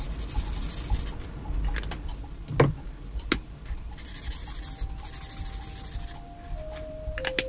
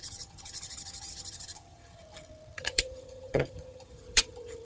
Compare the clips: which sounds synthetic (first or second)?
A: second